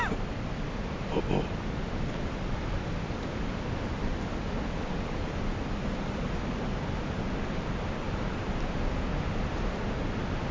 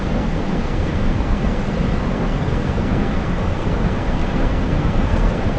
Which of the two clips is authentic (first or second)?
first